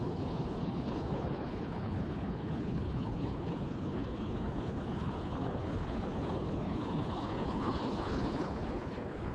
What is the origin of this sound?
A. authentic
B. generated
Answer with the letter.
B